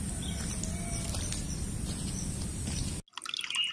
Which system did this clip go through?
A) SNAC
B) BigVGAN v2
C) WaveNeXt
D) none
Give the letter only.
D